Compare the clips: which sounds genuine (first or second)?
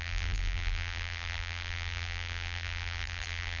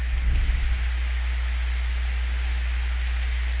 second